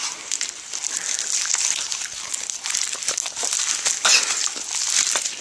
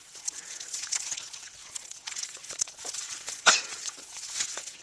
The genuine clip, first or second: first